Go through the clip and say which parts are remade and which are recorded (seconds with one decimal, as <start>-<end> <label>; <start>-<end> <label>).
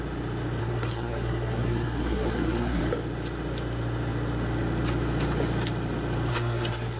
0.0-0.6 recorded; 0.6-2.8 remade; 2.8-6.3 recorded; 6.3-7.0 remade